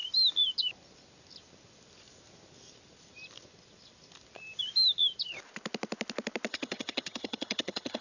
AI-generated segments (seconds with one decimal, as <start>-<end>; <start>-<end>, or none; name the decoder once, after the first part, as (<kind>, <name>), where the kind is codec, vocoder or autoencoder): 6.5-8.0 (vocoder, HiFi-GAN)